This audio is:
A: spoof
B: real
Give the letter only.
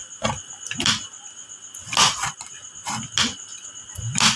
B